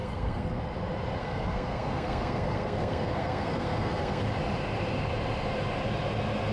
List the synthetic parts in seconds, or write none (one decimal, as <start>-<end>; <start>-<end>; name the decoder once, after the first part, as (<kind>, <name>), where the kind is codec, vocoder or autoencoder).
0.0-0.6 (codec, SNAC); 1.2-4.2